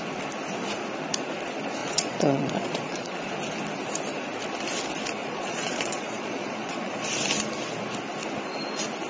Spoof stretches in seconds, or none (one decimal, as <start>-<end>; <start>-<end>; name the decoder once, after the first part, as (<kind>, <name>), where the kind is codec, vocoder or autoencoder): 1.8-3.3 (vocoder, Vocos); 5.2-6.9